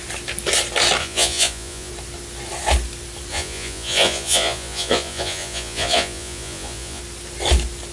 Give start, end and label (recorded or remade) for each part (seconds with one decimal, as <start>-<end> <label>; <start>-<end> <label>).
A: 0.0-1.0 recorded; 1.0-1.9 remade; 1.9-3.3 recorded; 3.3-7.0 remade; 7.0-7.9 recorded